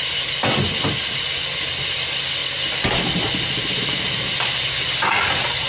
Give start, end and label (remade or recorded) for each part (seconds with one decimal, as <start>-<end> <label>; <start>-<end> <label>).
0.0-5.7 recorded